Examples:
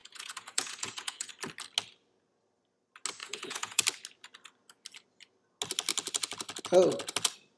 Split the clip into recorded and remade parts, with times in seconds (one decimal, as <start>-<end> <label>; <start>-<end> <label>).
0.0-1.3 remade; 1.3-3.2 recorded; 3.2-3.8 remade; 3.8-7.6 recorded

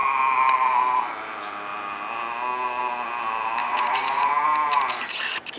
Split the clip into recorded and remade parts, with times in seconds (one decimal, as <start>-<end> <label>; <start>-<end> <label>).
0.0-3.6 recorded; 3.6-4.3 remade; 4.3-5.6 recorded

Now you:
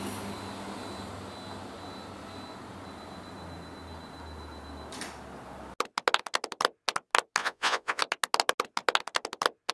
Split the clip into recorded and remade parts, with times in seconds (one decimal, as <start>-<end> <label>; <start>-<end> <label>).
0.0-7.4 recorded; 7.4-8.0 remade; 8.0-9.7 recorded